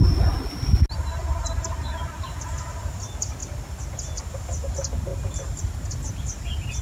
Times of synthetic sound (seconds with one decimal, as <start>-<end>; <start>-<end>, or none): none

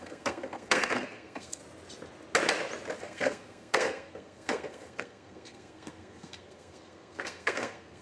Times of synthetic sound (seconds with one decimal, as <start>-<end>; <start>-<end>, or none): 0.0-1.6; 3.0-8.0

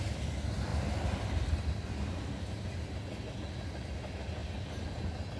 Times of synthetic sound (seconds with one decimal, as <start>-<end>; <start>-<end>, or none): none

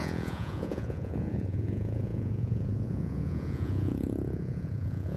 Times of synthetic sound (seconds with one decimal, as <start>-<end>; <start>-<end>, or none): 0.0-5.2